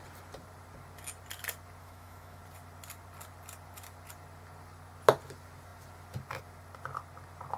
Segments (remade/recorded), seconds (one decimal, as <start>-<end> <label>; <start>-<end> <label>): 0.0-1.8 recorded; 1.8-2.4 remade; 2.4-7.6 recorded